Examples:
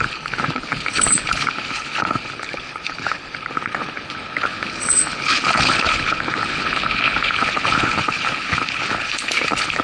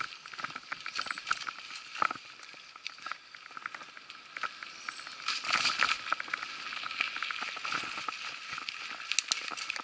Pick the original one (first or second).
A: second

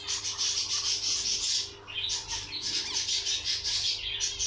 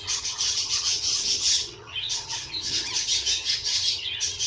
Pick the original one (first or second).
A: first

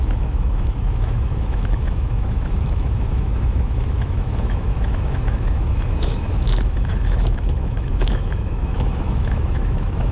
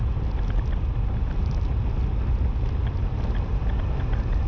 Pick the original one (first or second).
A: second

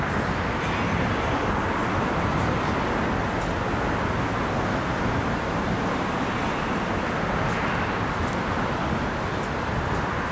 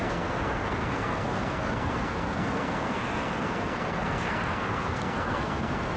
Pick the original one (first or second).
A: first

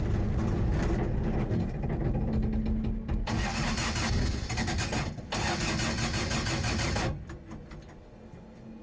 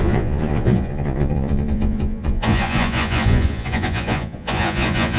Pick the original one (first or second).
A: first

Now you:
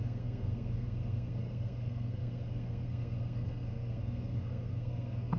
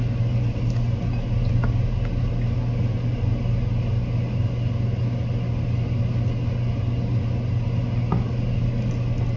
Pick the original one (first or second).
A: second